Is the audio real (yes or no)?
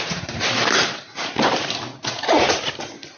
no